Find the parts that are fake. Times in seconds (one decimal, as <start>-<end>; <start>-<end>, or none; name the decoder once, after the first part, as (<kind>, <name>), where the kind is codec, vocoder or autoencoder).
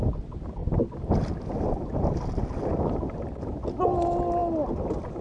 none